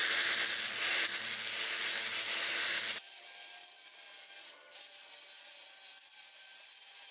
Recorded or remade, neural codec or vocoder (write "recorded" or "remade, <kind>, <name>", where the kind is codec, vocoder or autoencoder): recorded